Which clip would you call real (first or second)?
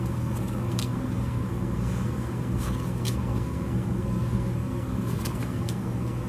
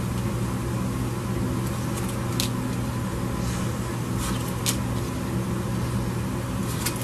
second